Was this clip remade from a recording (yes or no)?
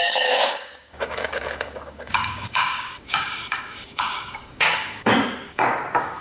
yes